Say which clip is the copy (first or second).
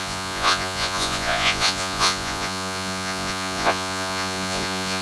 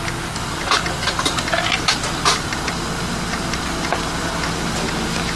first